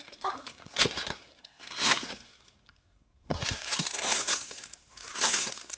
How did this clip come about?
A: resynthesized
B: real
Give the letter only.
A